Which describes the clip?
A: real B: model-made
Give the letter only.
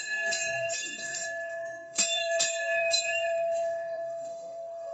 B